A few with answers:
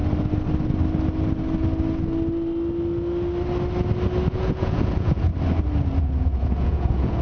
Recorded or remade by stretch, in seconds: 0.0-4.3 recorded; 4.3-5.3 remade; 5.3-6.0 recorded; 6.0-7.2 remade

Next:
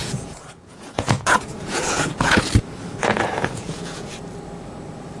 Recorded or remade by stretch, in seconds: 0.0-2.4 remade; 2.4-3.0 recorded; 3.0-4.1 remade; 4.1-5.2 recorded